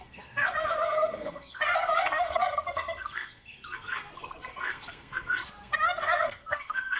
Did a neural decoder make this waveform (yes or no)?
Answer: yes